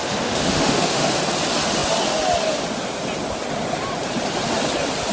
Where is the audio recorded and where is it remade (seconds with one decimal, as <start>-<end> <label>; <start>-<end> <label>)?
0.0-1.2 remade; 1.2-5.1 recorded